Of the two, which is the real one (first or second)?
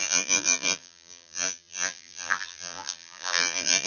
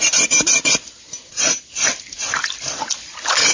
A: second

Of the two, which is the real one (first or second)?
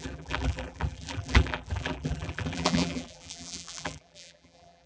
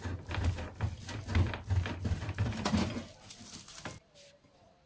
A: second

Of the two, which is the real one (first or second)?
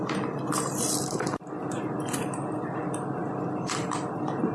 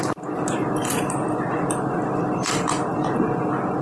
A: second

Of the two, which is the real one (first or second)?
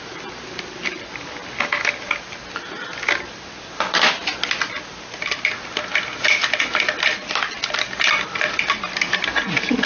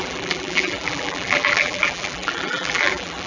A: first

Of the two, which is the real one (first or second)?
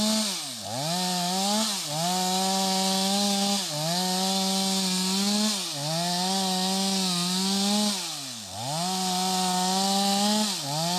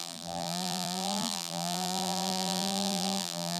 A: first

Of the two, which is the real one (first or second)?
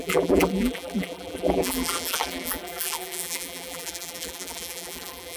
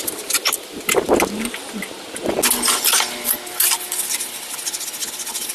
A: second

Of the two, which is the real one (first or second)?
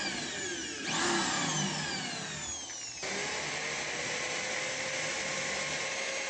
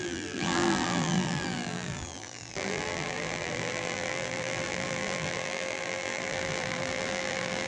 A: first